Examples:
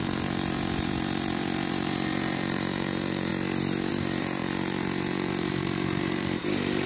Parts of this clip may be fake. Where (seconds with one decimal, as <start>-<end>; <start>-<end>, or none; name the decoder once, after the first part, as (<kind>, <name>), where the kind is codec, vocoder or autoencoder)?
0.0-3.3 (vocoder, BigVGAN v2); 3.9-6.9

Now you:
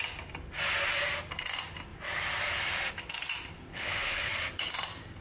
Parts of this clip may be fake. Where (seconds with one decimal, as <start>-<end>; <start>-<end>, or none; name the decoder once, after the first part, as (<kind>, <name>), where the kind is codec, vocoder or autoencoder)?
3.7-4.3 (codec, HILCodec)

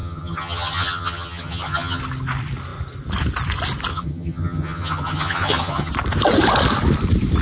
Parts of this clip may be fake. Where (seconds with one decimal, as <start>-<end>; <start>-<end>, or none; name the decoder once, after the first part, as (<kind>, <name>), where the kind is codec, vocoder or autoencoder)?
0.0-2.0 (vocoder, HiFi-GAN); 3.9-5.9

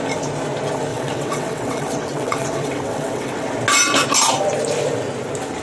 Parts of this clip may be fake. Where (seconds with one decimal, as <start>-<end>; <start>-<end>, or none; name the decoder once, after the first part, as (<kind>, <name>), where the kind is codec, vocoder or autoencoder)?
0.9-3.5 (vocoder, WaveNeXt)

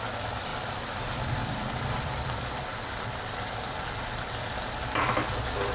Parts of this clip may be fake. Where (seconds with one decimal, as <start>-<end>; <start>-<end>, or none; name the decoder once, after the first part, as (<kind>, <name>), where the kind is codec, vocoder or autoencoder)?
0.5-3.9 (vocoder, BigVGAN v2)

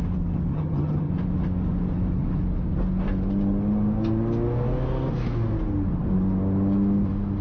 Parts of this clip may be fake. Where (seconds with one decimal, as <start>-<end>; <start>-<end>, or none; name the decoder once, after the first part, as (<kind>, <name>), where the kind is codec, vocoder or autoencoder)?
0.5-1.1 (vocoder, HiFi-GAN)

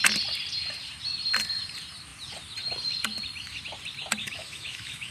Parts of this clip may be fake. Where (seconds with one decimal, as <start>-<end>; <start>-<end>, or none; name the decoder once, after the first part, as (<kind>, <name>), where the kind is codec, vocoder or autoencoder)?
4.2-5.1 (autoencoder, DAC-VAE)

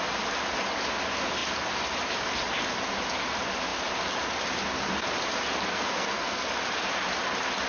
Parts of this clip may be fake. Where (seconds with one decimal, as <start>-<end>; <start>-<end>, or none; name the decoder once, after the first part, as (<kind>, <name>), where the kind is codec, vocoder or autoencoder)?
5.7-6.5 (codec, SNAC)